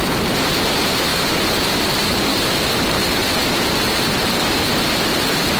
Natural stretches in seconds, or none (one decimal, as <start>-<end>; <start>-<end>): none